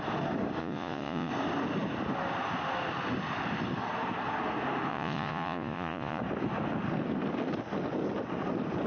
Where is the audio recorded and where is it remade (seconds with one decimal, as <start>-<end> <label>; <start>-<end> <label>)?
0.0-0.6 recorded; 0.6-1.3 remade; 1.3-4.9 recorded; 4.9-6.2 remade; 6.2-8.9 recorded